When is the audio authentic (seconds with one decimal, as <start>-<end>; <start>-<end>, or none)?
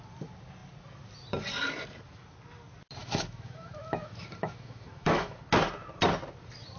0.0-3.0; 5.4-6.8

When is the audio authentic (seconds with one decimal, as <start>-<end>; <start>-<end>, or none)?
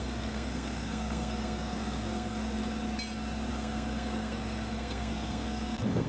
2.6-3.5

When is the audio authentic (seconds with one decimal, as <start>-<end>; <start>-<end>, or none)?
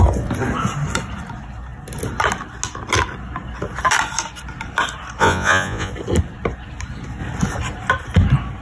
0.0-5.2; 5.9-8.6